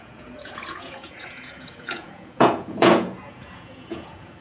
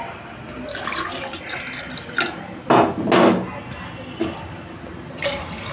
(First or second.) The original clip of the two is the second